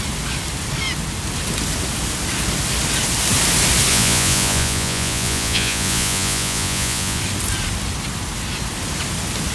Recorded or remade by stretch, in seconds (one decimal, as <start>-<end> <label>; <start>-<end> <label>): 0.0-3.9 recorded; 3.9-7.2 remade; 7.2-9.5 recorded

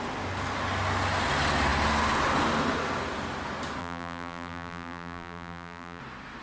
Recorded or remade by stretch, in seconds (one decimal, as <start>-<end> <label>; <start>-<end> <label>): 0.0-3.8 recorded; 3.8-6.0 remade; 6.0-6.4 recorded

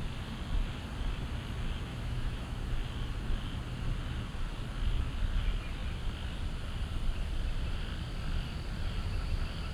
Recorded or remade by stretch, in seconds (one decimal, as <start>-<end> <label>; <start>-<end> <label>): 0.0-1.9 recorded; 1.9-2.6 remade; 2.6-9.7 recorded

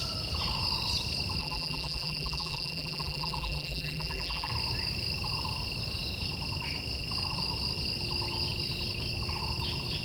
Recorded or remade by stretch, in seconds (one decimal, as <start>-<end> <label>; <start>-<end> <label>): 0.0-1.4 recorded; 1.4-4.5 remade; 4.5-10.0 recorded

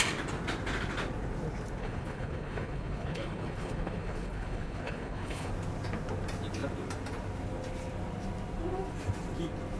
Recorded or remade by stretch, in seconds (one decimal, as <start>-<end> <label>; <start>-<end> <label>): 0.0-1.8 recorded; 1.8-5.5 remade; 5.5-9.8 recorded

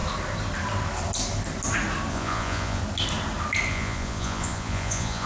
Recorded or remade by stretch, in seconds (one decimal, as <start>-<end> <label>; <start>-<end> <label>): 0.0-2.1 recorded; 2.1-2.8 remade; 2.8-3.7 recorded; 3.7-5.3 remade